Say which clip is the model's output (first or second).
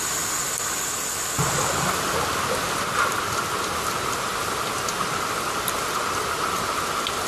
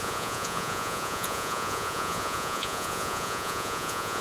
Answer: second